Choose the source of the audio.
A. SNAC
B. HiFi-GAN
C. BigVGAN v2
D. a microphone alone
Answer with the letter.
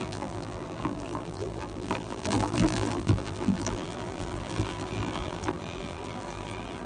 C